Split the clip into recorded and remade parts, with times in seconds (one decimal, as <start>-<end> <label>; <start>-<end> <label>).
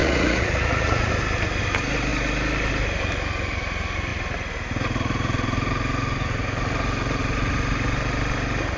0.0-1.1 remade; 1.1-8.8 recorded